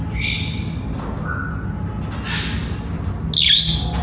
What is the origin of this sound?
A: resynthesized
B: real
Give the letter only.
B